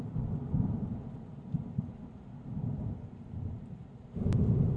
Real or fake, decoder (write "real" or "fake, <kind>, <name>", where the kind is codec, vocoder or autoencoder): real